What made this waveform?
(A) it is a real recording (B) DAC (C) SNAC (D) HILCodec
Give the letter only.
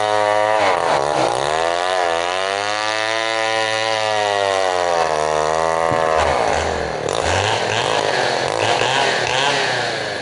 A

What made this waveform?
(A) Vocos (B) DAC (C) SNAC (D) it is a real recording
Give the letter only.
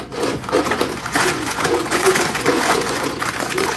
A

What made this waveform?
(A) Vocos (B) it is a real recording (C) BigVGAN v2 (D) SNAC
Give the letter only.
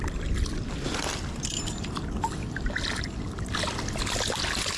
B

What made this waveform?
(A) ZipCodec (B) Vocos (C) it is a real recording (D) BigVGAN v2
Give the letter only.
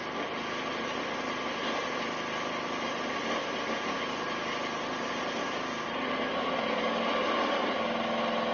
C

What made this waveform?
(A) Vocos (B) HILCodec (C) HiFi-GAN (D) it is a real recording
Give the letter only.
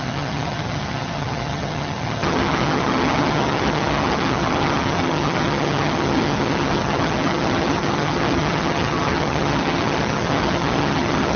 C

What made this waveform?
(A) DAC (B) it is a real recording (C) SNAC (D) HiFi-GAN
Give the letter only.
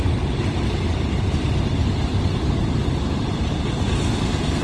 B